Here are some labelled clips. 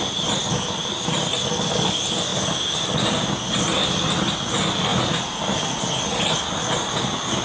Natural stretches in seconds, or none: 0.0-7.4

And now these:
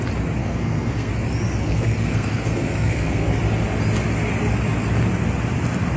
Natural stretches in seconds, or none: 0.0-0.4; 1.1-1.6; 3.4-6.0

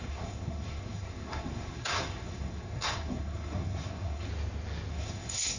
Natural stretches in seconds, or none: 4.3-4.9

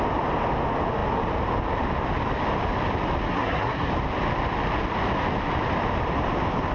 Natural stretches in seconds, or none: 0.0-3.3; 3.9-6.7

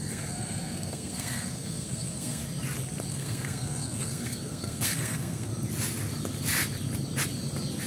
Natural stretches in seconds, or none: 2.4-3.1; 5.5-7.9

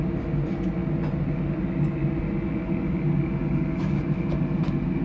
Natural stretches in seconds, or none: 0.0-5.0

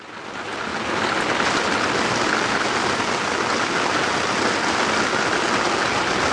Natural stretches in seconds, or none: 0.0-6.3

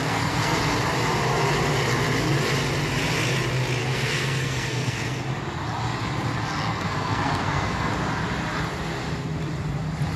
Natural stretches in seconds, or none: 0.6-3.8; 5.2-6.7; 7.9-10.2